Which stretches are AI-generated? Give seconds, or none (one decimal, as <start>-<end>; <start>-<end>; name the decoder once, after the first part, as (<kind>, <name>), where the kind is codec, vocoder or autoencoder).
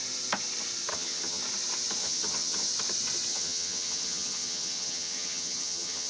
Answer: 0.9-1.4 (vocoder, HiFi-GAN); 2.0-2.7; 3.3-6.1